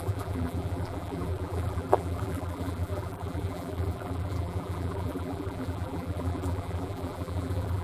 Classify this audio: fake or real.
fake